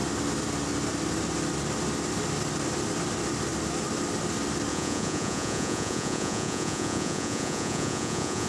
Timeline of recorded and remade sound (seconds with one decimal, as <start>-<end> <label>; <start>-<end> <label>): 0.0-4.7 recorded; 4.7-8.5 remade